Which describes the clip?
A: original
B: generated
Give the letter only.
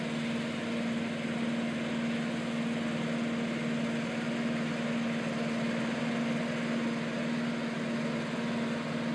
A